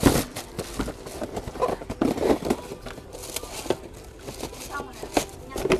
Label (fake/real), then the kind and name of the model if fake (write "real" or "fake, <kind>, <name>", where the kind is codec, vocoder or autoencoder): real